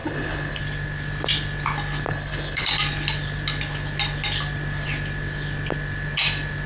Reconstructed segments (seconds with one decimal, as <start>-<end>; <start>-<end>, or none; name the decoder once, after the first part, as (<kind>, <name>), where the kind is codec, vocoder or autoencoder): 0.0-0.6 (codec, HILCodec); 2.1-2.7

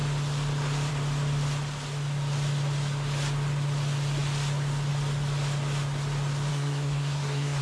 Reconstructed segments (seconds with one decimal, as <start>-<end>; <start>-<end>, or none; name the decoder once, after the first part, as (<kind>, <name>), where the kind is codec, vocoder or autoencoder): 6.5-7.6 (codec, SNAC)

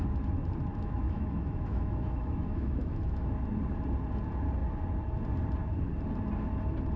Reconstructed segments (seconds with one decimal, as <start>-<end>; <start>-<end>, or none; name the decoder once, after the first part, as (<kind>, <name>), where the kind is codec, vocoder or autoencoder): 0.7-3.3 (autoencoder, DAC-VAE)